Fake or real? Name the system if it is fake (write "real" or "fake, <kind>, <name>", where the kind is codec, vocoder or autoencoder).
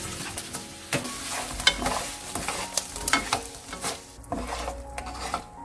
real